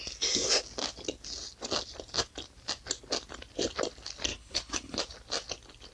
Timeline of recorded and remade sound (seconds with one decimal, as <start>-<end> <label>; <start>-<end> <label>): 0.0-4.3 recorded; 4.3-5.0 remade; 5.0-5.9 recorded